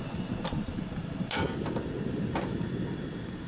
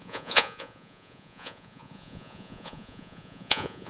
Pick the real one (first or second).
first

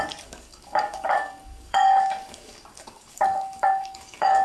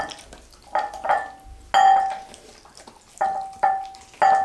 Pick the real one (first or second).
second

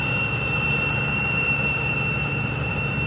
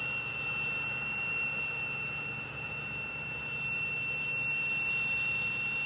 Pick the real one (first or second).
second